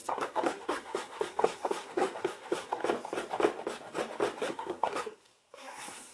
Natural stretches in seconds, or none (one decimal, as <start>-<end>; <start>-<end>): 2.8-4.4

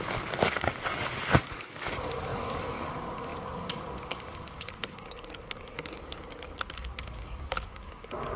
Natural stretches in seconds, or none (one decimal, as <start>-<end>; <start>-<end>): none

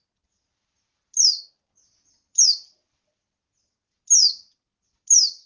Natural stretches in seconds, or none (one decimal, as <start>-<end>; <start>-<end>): 0.0-5.5

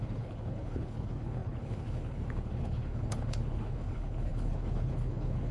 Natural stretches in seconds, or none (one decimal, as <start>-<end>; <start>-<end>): none

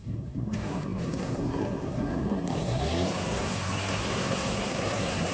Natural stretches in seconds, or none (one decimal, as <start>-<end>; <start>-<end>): none

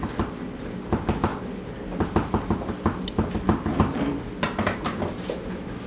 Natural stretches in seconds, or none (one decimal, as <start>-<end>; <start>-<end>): 0.0-5.9

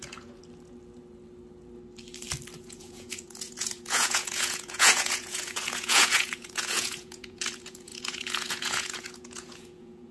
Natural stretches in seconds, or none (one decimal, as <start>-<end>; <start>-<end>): 0.4-2.6

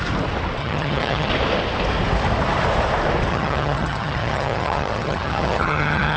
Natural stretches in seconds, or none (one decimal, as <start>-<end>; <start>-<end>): 0.0-0.6; 1.3-3.3